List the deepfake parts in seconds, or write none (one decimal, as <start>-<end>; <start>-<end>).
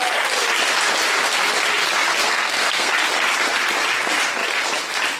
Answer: 2.2-2.9